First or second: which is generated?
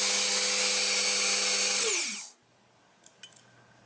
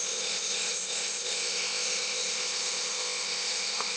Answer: second